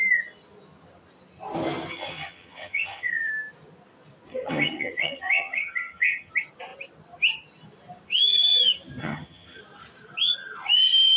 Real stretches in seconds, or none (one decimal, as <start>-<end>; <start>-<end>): 0.0-1.9; 3.3-4.3; 6.3-9.0; 9.6-11.2